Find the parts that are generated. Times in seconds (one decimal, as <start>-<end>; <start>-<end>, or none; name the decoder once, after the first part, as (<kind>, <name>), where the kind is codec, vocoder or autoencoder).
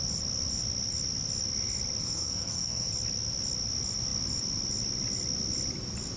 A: 2.0-2.9 (codec, SNAC)